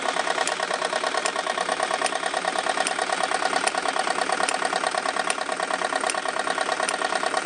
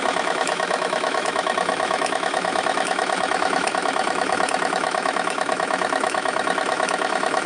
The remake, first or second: second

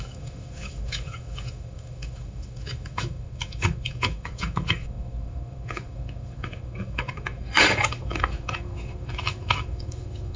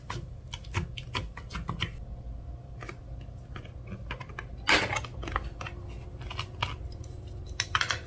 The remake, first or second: first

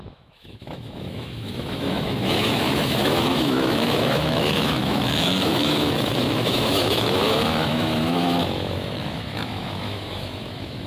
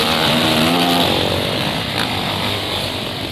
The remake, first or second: first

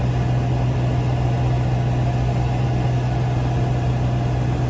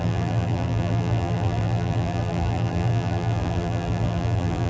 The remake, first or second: second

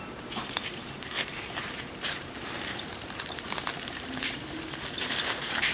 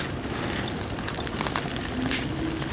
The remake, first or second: first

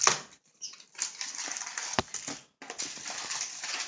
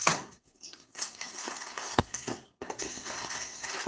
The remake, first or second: second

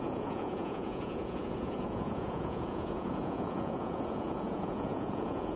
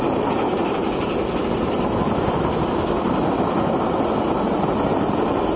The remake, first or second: first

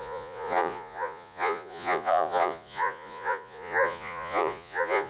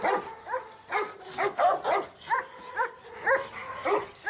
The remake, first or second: first